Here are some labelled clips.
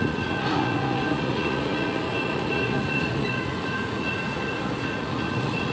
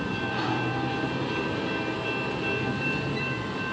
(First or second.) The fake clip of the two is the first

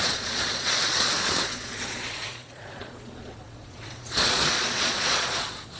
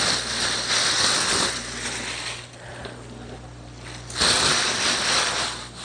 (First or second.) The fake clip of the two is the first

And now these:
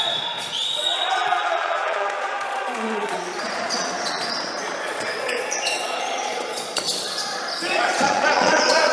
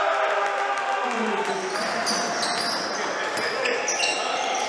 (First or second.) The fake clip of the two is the first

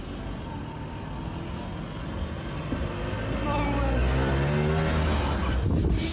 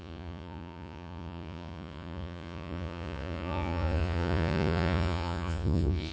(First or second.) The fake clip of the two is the second